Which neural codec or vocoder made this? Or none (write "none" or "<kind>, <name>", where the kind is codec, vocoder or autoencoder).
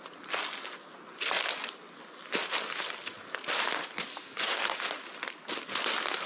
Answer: none